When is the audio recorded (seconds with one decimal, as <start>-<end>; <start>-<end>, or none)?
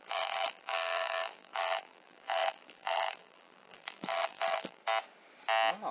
4.8-5.9